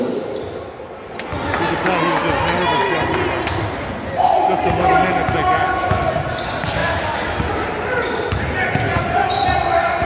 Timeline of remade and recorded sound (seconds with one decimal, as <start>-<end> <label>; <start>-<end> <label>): 0.0-10.0 recorded